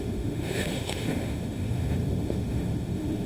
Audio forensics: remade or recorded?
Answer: remade